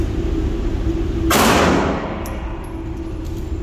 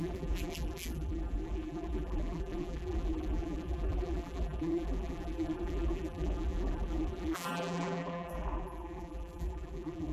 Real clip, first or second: first